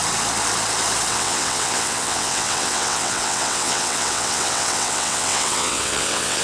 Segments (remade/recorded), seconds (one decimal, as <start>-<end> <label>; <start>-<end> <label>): 0.0-1.1 recorded; 1.1-6.4 remade